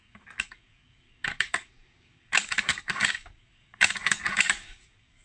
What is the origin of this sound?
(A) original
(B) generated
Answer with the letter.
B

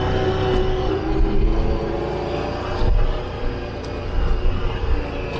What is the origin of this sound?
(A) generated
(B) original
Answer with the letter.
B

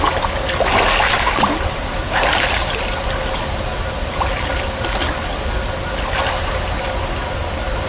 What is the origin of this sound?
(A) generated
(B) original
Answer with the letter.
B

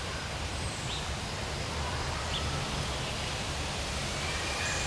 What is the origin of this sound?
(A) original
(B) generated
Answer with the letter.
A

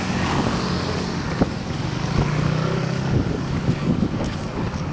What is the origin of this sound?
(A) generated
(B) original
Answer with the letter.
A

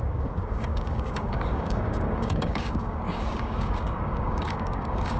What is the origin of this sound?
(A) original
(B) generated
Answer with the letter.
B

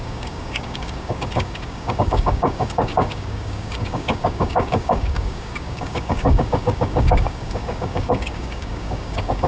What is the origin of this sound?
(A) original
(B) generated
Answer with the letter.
B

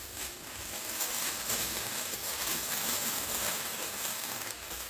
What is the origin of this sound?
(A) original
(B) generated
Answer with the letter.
B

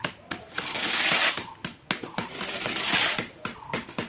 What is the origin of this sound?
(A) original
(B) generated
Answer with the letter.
A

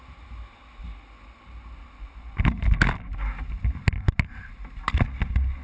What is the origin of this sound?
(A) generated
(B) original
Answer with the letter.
B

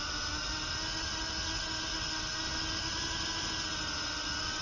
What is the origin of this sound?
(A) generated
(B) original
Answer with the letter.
B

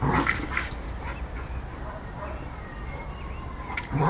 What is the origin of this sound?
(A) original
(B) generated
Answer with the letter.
A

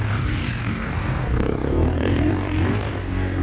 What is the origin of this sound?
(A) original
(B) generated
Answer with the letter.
B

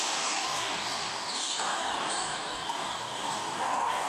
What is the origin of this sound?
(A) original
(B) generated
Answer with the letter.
B